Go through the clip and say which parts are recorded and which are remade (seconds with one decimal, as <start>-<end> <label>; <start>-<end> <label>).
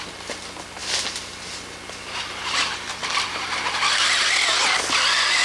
0.0-5.4 recorded